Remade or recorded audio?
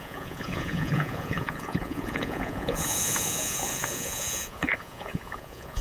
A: remade